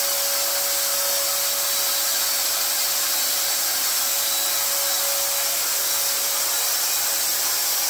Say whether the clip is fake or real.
real